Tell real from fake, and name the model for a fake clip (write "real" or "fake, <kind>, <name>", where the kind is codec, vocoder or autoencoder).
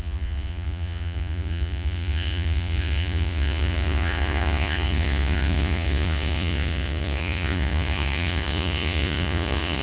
fake, vocoder, Vocos